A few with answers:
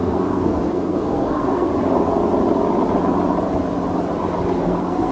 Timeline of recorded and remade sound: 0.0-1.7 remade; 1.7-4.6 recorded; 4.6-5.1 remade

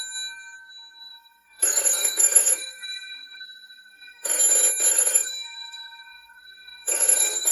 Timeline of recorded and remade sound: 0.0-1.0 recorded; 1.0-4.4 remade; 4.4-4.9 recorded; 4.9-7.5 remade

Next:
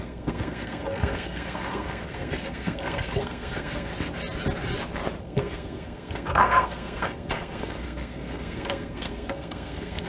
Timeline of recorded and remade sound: 0.0-3.9 remade; 3.9-5.2 recorded; 5.2-10.1 remade

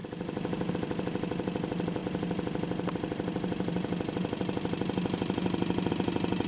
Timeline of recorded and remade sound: 0.0-6.5 recorded

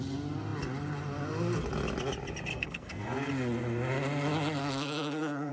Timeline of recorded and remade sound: 0.0-2.5 recorded; 2.5-3.3 remade; 3.3-4.6 recorded; 4.6-5.5 remade